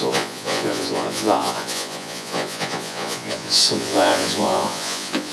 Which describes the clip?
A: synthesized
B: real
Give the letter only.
A